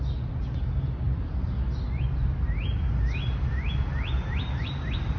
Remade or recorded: recorded